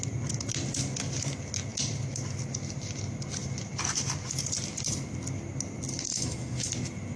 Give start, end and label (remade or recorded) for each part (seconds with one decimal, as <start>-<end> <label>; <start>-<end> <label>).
0.0-6.1 recorded; 6.1-6.7 remade; 6.7-7.2 recorded